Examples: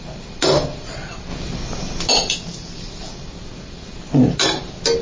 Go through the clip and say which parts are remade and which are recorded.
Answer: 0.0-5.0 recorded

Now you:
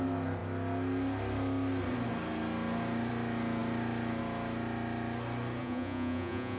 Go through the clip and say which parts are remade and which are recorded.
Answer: 0.0-5.6 recorded; 5.6-6.6 remade